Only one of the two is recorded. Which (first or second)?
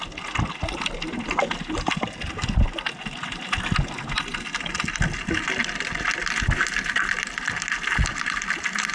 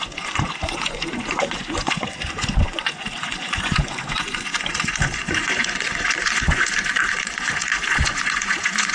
first